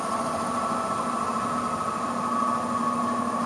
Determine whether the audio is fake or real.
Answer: real